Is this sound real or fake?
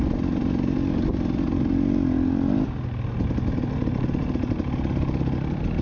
real